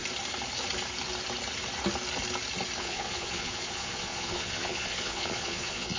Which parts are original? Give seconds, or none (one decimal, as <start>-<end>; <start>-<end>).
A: 0.0-2.8